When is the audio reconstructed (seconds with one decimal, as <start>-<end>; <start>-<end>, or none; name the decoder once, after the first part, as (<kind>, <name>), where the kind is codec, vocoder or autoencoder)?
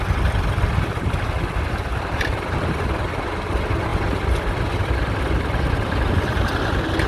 1.9-3.2 (vocoder, BigVGAN v2); 3.9-6.1